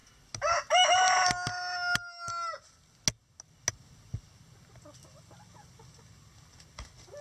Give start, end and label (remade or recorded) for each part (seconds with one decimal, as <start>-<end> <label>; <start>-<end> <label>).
0.0-7.2 recorded